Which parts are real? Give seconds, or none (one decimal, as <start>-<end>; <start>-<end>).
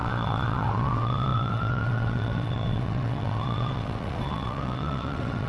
none